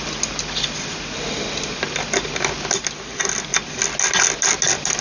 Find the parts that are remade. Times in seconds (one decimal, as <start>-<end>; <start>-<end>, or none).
none